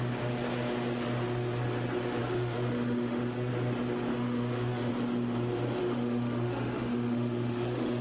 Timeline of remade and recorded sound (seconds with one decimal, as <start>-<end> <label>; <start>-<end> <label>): 0.0-2.2 recorded; 2.2-3.5 remade; 3.5-4.1 recorded; 4.1-4.9 remade; 4.9-5.8 recorded; 5.8-8.0 remade